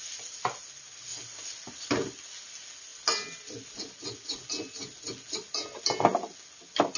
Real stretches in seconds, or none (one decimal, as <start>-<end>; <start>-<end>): 0.0-7.0

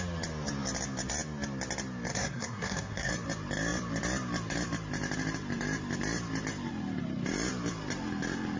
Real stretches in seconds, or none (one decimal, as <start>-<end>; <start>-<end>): 0.0-2.1; 3.1-8.6

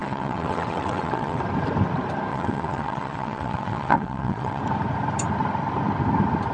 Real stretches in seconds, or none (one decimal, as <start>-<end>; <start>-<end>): 1.4-2.3; 4.6-6.5

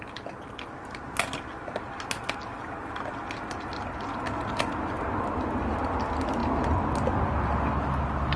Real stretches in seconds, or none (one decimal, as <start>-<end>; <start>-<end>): 0.0-8.4

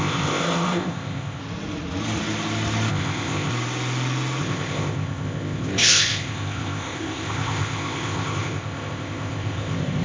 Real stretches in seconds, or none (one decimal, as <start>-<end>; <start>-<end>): 1.4-2.9; 3.5-4.4